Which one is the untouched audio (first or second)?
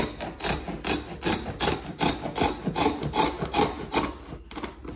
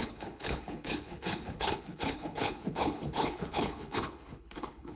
first